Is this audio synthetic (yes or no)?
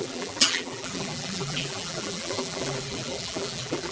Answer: yes